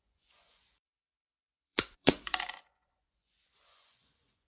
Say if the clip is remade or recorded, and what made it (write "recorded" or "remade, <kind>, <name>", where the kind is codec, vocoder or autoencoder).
remade, vocoder, Vocos